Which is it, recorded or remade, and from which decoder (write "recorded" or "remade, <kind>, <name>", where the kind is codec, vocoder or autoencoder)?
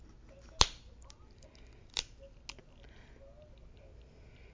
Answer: recorded